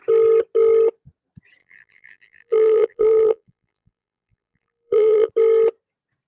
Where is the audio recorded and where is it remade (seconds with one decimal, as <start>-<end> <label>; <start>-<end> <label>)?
0.0-1.6 recorded; 1.6-5.3 remade; 5.3-6.3 recorded